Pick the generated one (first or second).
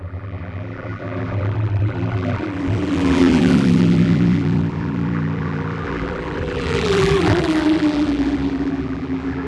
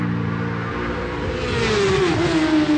first